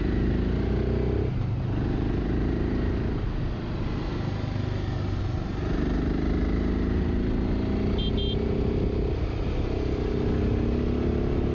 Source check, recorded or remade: recorded